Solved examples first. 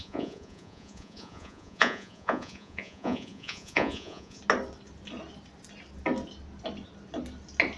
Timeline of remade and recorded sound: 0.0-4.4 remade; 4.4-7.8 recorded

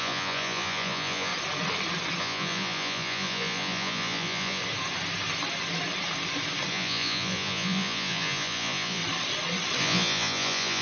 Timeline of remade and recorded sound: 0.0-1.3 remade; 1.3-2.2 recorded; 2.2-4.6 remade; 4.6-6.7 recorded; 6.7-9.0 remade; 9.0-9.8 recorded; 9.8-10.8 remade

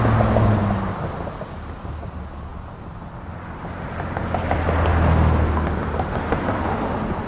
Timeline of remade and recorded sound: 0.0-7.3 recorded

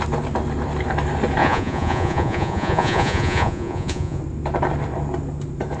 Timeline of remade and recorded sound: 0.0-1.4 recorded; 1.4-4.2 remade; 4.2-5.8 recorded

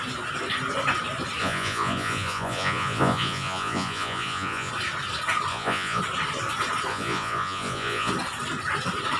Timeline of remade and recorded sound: 0.0-1.4 recorded; 1.4-4.7 remade; 4.7-5.5 recorded; 5.5-6.0 remade; 6.0-6.9 recorded; 6.9-8.1 remade; 8.1-9.2 recorded

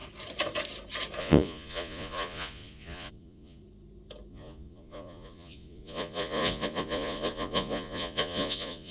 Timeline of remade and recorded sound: 0.0-1.2 recorded; 1.2-3.6 remade; 3.6-4.3 recorded; 4.3-8.9 remade